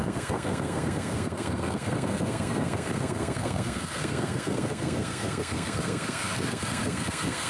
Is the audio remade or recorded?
remade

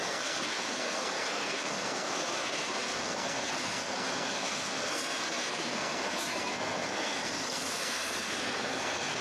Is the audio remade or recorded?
remade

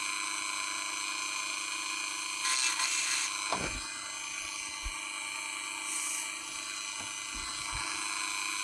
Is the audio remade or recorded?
recorded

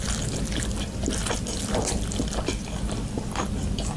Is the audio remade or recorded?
recorded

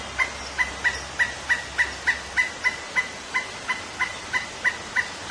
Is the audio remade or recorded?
recorded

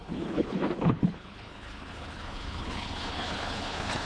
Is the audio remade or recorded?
remade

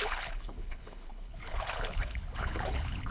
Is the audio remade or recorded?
remade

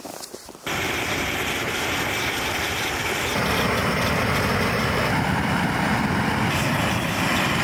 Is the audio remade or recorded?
remade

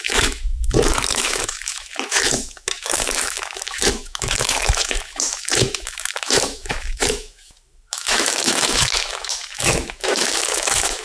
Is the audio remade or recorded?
remade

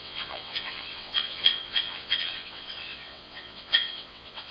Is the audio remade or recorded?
remade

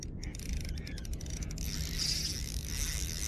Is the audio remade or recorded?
recorded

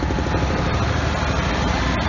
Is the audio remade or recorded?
recorded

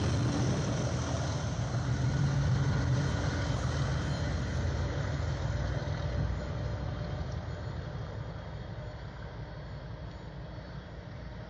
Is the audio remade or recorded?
recorded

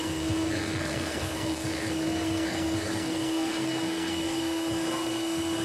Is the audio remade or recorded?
remade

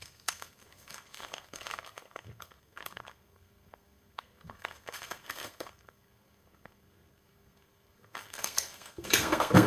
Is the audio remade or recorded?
remade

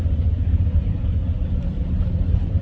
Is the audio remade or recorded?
remade